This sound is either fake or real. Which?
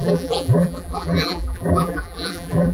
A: fake